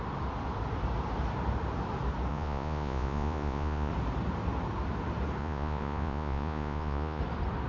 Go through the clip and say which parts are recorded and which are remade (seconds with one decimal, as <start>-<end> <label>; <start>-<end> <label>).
0.0-2.3 recorded; 2.3-3.9 remade; 3.9-5.4 recorded; 5.4-7.2 remade; 7.2-7.7 recorded